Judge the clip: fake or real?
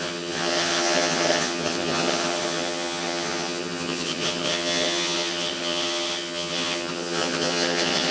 fake